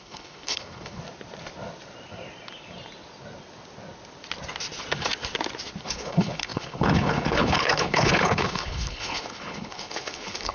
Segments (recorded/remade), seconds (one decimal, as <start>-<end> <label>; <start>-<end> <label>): 0.0-1.0 remade; 1.0-5.8 recorded; 5.8-10.5 remade